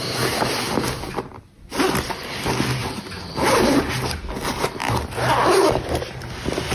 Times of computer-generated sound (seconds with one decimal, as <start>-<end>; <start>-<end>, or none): 4.8-6.1

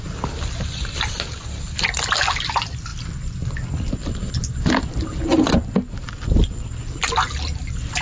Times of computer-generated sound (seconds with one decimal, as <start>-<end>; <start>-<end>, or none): 6.0-6.7

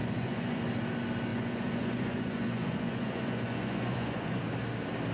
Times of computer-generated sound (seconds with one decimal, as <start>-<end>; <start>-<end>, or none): 0.0-0.6; 1.3-4.4

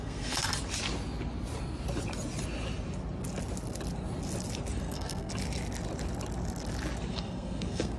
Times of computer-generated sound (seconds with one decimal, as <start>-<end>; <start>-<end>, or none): 0.0-0.5; 4.8-5.3; 7.1-8.0

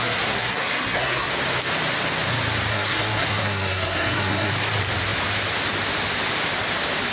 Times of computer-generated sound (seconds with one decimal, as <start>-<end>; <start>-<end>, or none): 0.0-1.3; 2.7-4.5